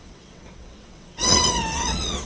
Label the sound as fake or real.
fake